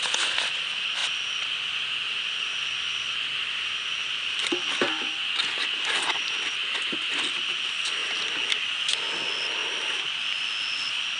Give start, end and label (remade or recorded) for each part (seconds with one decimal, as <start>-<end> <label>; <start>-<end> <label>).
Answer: 0.0-11.2 recorded